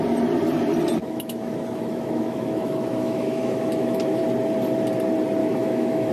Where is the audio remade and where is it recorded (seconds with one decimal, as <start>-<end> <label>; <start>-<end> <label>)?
0.0-1.0 recorded; 1.0-4.2 remade; 4.2-5.4 recorded; 5.4-6.1 remade